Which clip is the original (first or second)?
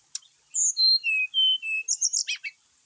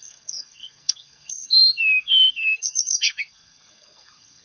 first